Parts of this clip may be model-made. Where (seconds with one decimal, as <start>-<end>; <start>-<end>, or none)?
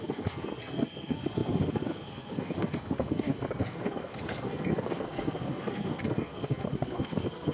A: 0.0-7.5